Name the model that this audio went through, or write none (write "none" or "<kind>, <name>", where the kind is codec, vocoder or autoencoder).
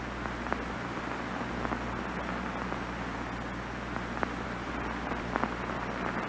none